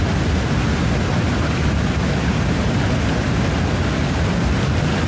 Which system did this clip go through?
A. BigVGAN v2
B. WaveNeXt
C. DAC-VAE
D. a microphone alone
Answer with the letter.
D